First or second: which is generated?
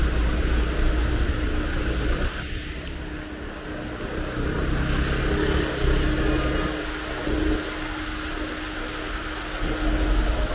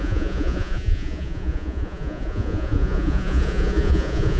second